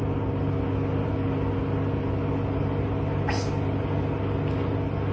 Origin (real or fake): real